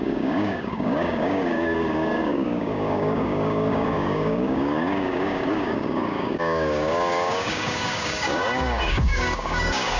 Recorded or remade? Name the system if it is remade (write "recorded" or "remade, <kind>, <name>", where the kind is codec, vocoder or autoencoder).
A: remade, codec, DAC